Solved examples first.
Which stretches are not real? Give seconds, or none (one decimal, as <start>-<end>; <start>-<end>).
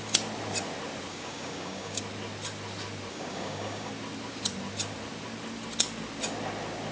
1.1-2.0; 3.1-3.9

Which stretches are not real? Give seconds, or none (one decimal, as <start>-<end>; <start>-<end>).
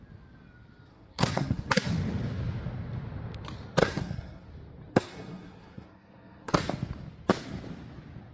0.9-1.7; 3.8-4.5; 4.9-6.5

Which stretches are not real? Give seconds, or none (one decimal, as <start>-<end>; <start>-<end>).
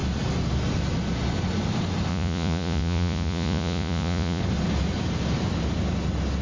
2.1-4.4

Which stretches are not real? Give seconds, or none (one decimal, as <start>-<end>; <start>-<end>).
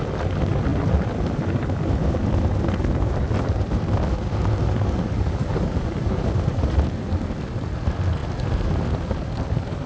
4.6-6.2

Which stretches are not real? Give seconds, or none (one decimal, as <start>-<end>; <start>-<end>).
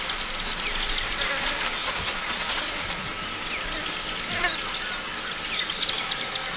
1.8-3.1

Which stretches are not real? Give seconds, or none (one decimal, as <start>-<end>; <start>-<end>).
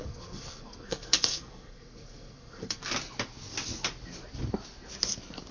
0.0-2.8